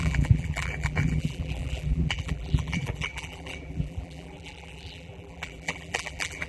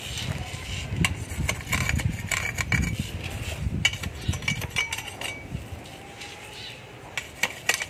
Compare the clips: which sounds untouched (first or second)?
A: second